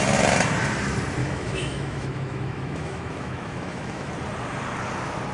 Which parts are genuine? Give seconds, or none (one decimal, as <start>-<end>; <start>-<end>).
0.0-1.2; 4.1-5.3